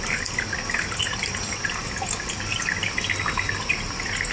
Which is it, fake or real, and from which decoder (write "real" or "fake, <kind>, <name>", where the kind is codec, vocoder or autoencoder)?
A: real